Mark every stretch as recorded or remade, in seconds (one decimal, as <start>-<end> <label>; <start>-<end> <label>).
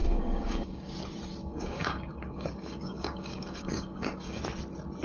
0.0-0.9 remade; 0.9-1.4 recorded; 1.4-4.4 remade; 4.4-5.0 recorded